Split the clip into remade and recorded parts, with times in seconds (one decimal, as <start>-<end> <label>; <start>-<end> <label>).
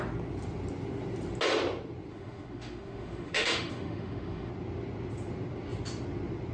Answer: 0.0-2.1 recorded; 2.1-4.5 remade; 4.5-6.5 recorded